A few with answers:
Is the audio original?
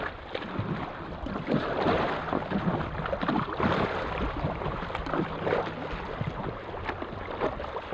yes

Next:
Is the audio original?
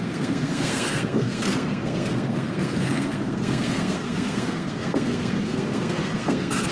no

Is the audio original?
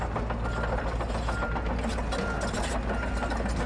yes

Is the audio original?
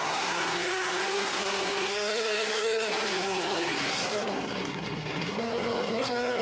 no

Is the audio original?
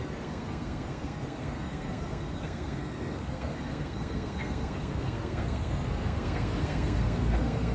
no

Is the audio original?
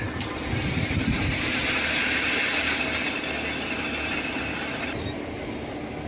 yes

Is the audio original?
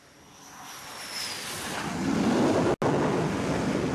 yes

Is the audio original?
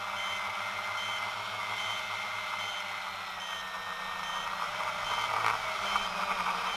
yes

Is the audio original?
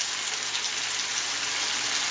yes